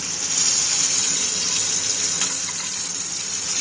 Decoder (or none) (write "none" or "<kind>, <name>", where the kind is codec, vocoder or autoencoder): none